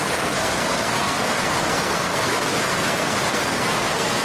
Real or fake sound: fake